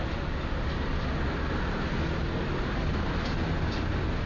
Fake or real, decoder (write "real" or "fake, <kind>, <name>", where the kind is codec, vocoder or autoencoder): real